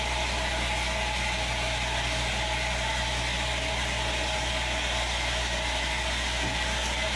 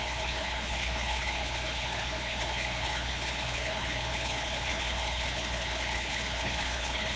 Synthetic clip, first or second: second